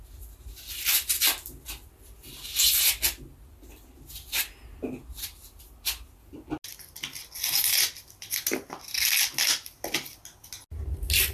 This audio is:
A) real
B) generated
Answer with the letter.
A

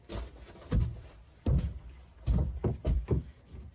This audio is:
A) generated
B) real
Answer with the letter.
B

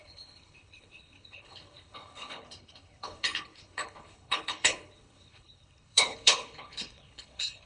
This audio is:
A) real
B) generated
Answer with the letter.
B